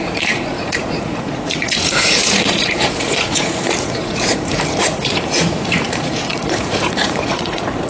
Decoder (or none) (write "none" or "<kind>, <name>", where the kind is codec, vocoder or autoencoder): vocoder, Vocos